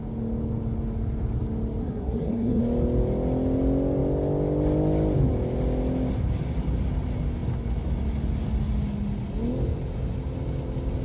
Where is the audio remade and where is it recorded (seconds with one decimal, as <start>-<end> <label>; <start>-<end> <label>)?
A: 0.0-1.8 recorded; 1.8-2.6 remade; 2.6-11.0 recorded